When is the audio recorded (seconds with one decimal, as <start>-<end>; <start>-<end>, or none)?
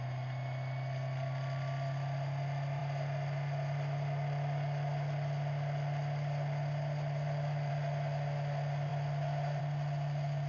0.0-10.5